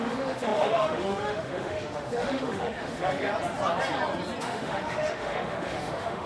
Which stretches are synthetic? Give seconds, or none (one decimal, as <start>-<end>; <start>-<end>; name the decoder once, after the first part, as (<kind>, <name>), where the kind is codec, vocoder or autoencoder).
0.0-3.3 (autoencoder, DAC-VAE); 4.4-6.3